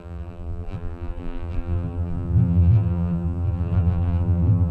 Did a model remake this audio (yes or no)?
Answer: yes